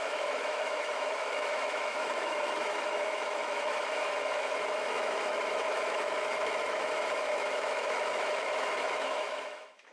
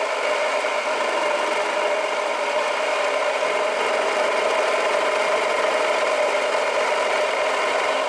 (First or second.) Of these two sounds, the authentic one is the second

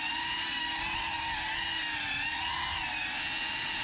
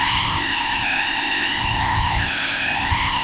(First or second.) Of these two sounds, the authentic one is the first